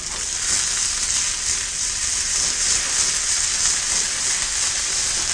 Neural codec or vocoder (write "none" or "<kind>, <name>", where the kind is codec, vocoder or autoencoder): none